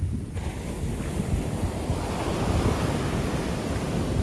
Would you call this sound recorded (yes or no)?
yes